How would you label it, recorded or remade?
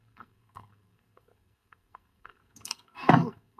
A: remade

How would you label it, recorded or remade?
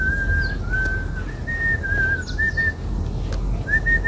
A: recorded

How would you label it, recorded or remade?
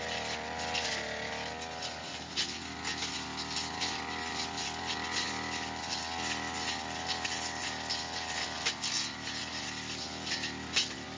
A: recorded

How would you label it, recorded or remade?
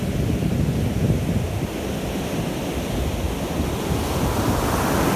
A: recorded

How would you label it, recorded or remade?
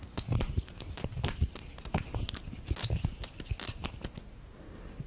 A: recorded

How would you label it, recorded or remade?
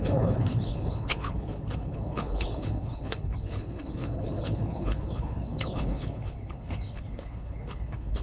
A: remade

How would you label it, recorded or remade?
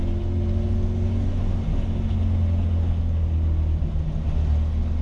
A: recorded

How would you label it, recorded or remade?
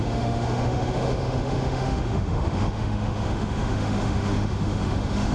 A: remade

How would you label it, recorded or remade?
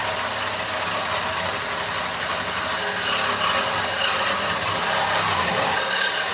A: recorded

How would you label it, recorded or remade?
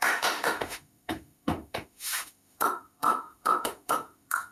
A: remade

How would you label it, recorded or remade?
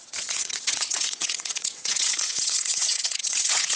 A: remade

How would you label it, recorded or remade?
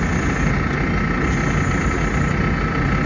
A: recorded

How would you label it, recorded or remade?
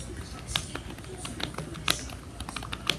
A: recorded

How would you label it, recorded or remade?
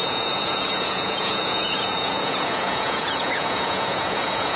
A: remade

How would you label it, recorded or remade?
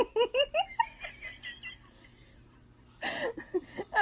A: recorded